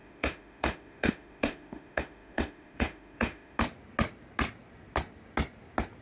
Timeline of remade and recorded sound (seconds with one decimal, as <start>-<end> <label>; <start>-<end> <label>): 0.0-3.6 remade; 3.6-6.0 recorded